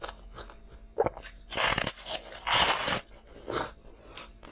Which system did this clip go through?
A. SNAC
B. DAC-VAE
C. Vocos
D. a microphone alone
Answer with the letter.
D